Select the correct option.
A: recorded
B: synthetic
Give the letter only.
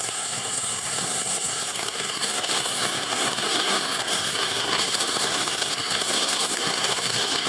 B